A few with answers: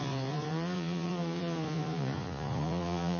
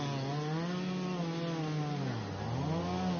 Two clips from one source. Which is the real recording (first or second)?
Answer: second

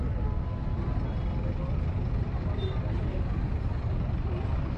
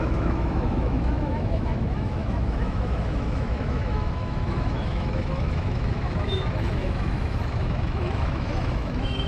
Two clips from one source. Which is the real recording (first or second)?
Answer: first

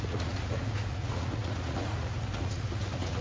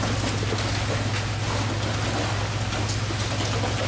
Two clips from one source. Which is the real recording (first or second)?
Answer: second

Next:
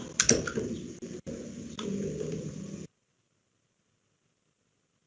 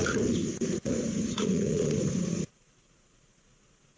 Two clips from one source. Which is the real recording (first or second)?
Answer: first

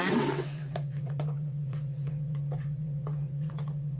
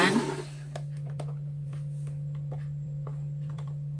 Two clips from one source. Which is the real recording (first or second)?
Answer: second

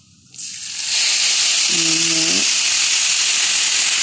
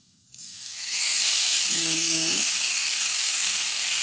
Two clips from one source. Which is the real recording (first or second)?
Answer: first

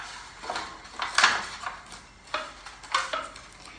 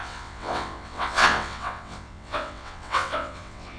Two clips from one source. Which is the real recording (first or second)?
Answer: first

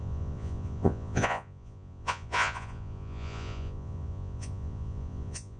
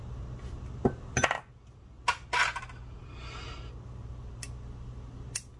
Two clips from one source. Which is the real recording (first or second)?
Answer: second